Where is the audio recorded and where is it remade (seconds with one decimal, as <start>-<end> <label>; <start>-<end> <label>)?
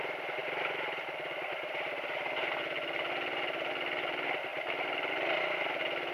0.0-6.1 recorded